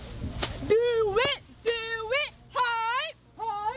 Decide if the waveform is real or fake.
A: real